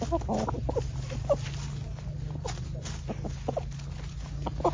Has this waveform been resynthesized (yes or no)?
no